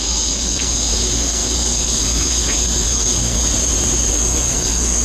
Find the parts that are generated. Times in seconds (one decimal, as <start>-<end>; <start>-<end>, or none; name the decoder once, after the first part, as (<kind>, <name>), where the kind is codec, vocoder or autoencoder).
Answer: 0.0-3.4 (codec, SNAC); 4.1-5.0